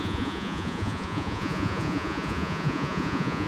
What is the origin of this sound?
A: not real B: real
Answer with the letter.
A